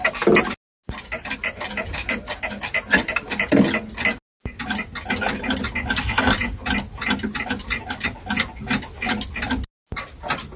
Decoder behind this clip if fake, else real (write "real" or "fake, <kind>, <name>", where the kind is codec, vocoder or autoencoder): real